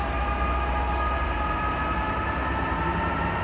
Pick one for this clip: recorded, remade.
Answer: recorded